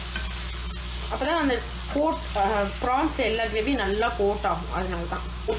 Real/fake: real